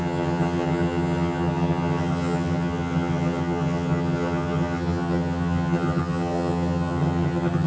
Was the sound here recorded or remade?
remade